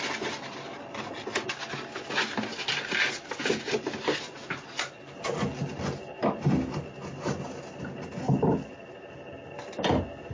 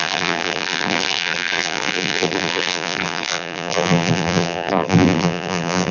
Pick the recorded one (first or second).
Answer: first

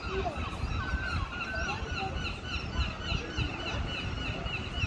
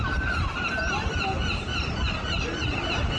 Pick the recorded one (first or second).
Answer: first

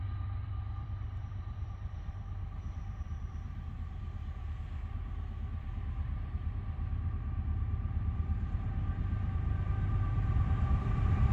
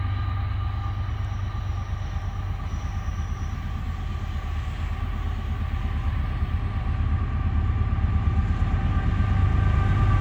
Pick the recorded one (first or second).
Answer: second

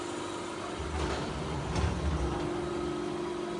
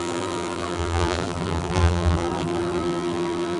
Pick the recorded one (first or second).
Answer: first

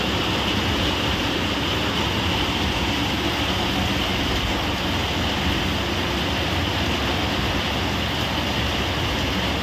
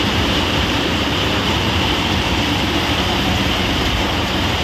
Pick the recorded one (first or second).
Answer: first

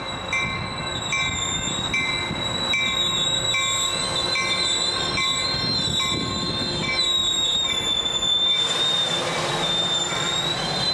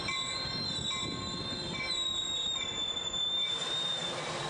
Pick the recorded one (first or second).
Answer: first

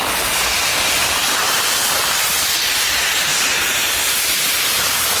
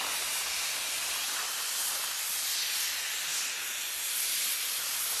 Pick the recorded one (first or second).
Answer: second